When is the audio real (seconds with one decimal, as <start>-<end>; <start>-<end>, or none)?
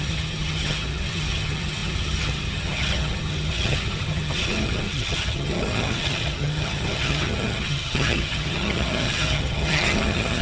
none